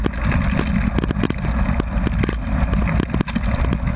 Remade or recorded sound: recorded